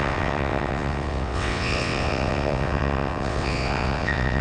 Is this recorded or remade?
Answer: remade